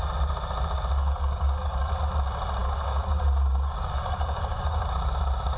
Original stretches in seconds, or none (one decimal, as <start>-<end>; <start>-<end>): 0.0-1.0; 1.9-2.6; 4.8-5.6